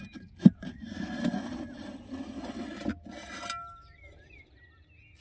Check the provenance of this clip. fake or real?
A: real